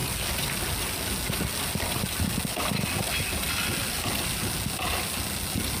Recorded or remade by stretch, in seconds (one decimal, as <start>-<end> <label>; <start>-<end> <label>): 0.0-5.8 recorded